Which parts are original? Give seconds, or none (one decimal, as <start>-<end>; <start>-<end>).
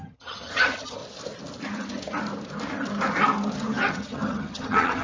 1.0-3.9